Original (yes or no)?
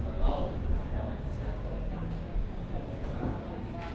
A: no